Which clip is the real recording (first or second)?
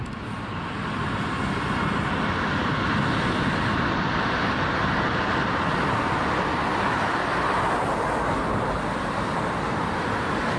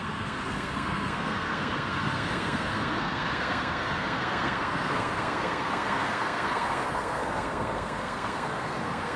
first